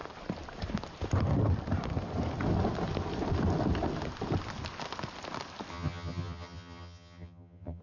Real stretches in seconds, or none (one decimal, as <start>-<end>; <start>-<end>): 0.0-5.7